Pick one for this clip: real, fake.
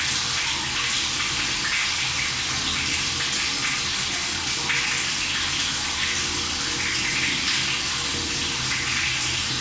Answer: real